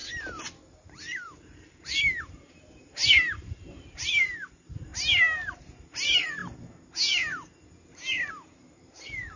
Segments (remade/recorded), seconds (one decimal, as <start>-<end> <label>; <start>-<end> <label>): 0.0-4.9 remade; 4.9-5.6 recorded; 5.6-6.4 remade; 6.4-8.3 recorded; 8.3-9.4 remade